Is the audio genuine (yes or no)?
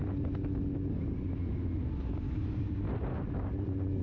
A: yes